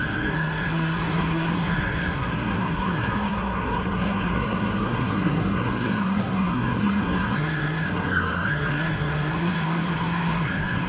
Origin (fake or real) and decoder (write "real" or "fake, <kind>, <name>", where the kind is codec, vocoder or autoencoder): fake, codec, SNAC